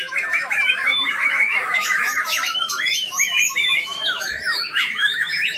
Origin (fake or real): fake